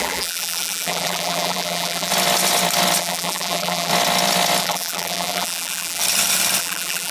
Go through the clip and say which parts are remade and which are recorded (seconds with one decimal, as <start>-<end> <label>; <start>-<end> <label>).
0.0-2.1 remade; 2.1-3.0 recorded; 3.0-3.9 remade; 3.9-4.6 recorded; 4.6-6.0 remade; 6.0-6.6 recorded; 6.6-7.1 remade